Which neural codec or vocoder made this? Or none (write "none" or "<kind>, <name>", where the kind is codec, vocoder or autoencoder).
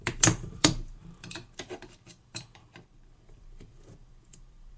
vocoder, BigVGAN v2